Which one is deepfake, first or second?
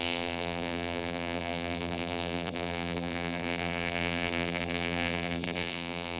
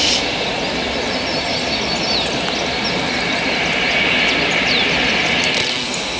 first